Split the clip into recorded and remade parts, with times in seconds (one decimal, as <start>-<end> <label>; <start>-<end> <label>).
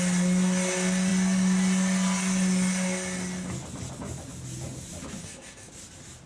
0.0-5.2 recorded; 5.2-5.7 remade; 5.7-6.3 recorded